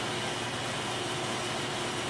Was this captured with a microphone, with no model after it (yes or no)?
yes